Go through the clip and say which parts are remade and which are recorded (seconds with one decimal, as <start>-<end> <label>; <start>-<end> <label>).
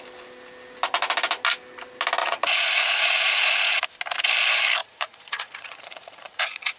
0.0-2.2 recorded; 2.2-3.8 remade; 3.8-4.8 recorded; 4.8-6.8 remade